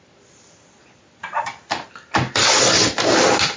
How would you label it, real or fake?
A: real